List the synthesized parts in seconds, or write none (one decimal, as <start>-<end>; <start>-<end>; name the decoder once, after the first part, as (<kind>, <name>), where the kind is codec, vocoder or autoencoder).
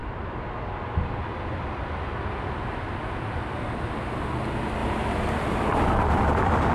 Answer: 4.8-5.8 (vocoder, BigVGAN v2)